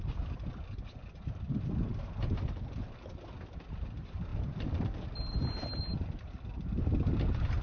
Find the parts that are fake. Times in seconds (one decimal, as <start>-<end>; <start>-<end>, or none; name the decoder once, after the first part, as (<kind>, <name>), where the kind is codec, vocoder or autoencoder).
none